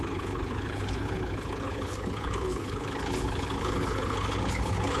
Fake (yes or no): yes